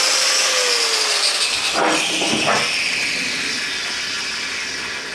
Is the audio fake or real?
real